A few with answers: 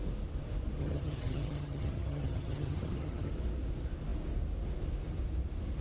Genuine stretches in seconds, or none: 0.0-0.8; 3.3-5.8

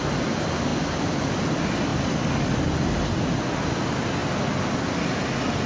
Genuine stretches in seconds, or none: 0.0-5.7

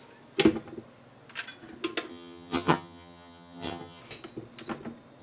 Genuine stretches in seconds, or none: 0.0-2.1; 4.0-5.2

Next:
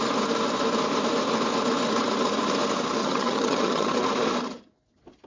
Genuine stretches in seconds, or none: 0.0-3.0; 4.0-5.3